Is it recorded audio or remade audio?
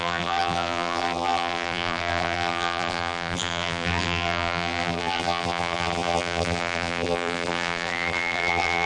remade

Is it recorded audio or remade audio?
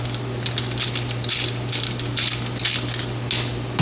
recorded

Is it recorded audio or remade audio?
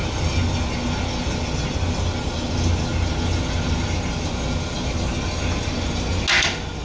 recorded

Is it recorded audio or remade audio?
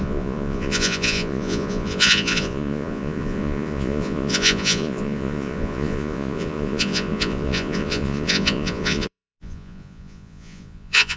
remade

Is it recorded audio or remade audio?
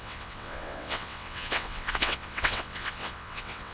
remade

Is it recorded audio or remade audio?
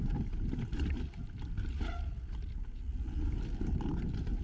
recorded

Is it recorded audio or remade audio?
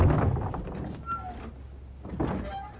recorded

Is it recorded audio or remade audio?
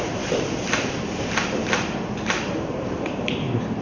remade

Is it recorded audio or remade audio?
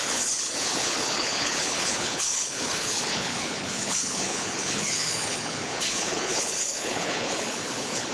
remade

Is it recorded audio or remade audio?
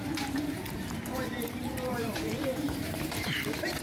remade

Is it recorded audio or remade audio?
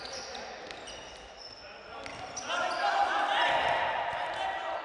recorded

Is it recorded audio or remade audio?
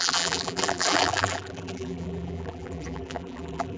remade